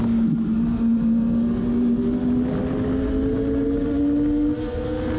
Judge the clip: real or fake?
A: real